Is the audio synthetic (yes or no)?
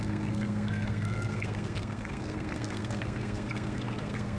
yes